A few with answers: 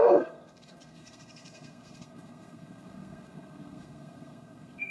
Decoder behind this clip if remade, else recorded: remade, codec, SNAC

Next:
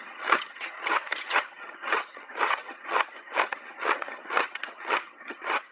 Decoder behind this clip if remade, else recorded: remade, vocoder, HiFi-GAN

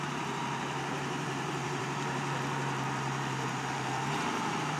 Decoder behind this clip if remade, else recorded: remade, vocoder, BigVGAN v2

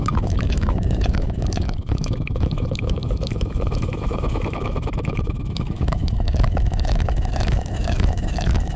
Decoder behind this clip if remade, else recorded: remade, autoencoder, DAC-VAE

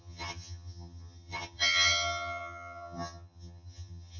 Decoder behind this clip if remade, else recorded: remade, vocoder, HiFi-GAN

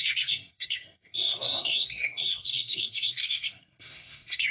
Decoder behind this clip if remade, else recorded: remade, codec, SNAC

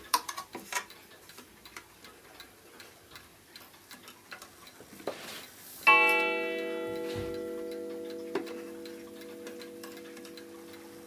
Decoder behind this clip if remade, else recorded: recorded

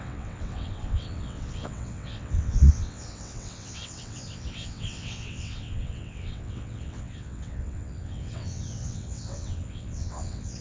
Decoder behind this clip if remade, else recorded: remade, vocoder, WaveNeXt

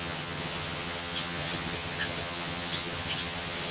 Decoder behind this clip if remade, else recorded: remade, vocoder, HiFi-GAN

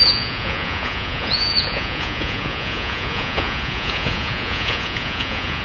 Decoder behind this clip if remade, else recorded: remade, vocoder, Vocos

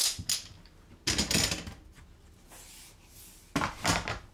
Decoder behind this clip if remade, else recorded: recorded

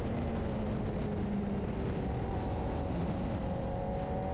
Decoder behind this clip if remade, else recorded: recorded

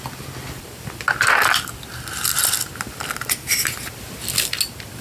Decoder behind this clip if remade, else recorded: recorded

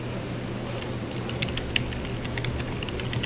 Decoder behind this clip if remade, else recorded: recorded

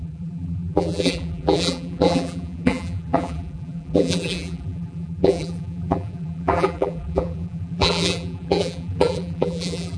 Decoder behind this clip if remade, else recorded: remade, vocoder, BigVGAN v2